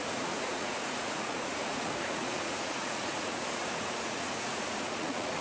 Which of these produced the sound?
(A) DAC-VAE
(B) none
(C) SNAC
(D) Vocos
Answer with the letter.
D